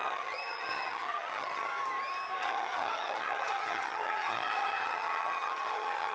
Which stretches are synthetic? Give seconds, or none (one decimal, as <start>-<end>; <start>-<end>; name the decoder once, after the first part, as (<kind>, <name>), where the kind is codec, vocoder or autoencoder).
0.0-1.7 (vocoder, HiFi-GAN); 2.4-6.1

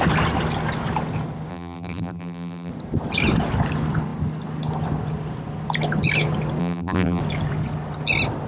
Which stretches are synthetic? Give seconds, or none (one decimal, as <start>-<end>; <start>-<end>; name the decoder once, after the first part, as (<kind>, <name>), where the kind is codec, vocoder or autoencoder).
1.5-2.7 (vocoder, BigVGAN v2); 6.6-7.2

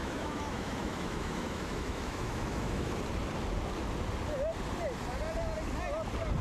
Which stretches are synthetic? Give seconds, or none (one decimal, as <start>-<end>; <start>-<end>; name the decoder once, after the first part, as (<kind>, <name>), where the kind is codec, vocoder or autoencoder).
0.0-3.0 (autoencoder, DAC-VAE)

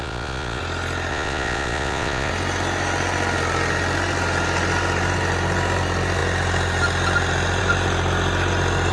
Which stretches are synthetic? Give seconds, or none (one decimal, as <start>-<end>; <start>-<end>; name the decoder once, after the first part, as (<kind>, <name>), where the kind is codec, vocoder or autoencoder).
0.0-0.6 (vocoder, Vocos); 1.1-2.3

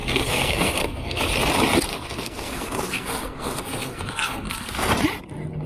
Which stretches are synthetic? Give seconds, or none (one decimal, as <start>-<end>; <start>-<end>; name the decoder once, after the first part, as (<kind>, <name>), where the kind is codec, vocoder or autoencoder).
0.0-1.2 (codec, SNAC); 1.9-4.9

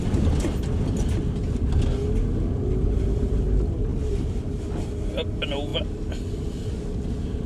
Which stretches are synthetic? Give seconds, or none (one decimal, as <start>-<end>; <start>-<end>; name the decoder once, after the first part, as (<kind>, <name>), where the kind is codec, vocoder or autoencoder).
3.9-4.6 (vocoder, BigVGAN v2)

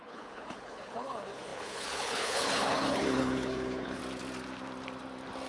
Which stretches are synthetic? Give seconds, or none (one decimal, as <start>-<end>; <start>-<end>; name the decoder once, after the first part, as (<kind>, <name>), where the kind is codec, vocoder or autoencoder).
0.0-4.0 (codec, HILCodec)

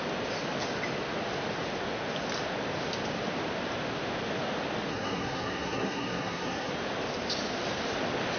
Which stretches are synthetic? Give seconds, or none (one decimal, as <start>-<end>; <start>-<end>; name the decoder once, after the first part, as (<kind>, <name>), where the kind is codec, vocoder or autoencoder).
4.9-6.7 (codec, SNAC)